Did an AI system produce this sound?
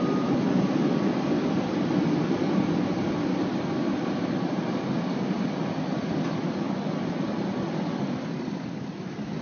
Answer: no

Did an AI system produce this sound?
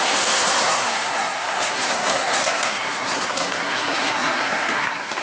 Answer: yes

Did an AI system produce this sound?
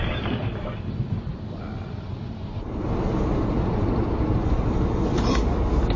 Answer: no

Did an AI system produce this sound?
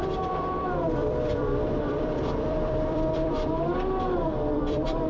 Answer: yes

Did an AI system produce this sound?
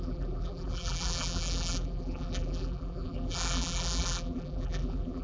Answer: yes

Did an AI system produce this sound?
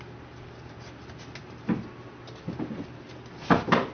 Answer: no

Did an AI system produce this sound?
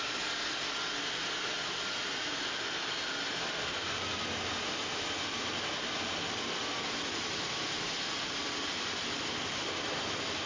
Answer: no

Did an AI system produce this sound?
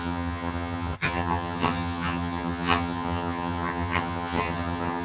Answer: yes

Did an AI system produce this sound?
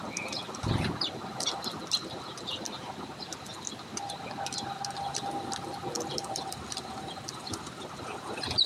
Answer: no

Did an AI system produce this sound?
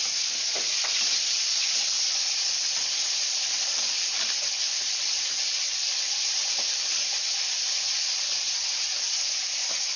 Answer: yes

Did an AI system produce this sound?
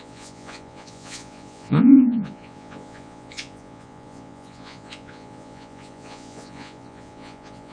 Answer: yes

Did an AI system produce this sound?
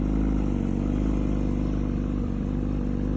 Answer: no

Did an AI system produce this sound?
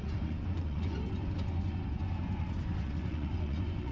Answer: yes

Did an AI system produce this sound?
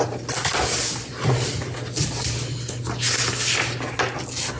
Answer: no